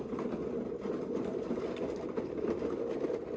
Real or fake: real